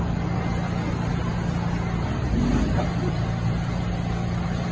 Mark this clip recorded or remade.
recorded